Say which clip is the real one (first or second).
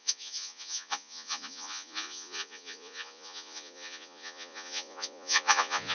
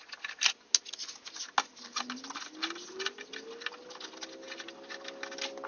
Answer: second